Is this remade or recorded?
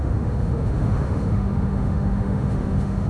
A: remade